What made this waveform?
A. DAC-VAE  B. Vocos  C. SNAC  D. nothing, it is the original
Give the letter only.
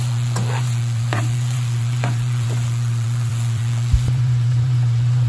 B